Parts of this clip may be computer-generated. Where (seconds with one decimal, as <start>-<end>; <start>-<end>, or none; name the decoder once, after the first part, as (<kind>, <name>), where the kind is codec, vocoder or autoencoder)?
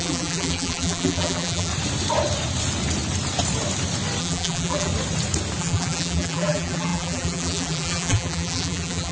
0.0-1.7 (vocoder, BigVGAN v2); 4.2-4.9; 5.6-9.1